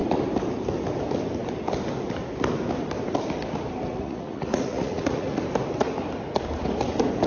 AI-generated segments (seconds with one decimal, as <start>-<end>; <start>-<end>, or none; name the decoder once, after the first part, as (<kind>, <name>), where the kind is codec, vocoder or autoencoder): 3.9-5.4 (vocoder, Vocos)